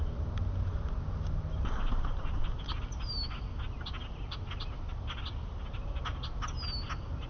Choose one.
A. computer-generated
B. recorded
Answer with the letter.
B